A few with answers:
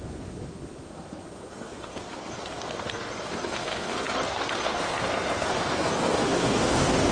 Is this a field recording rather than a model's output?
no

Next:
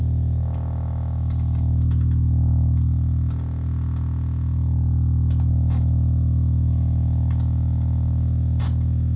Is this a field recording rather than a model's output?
yes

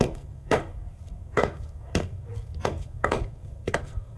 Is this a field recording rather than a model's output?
no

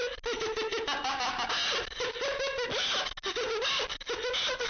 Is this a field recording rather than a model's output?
yes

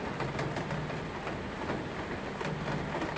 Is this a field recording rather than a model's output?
yes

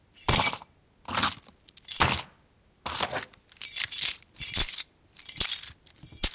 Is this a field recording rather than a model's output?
yes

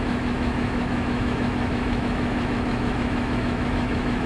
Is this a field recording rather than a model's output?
no